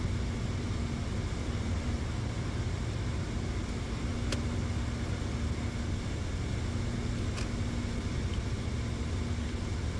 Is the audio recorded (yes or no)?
yes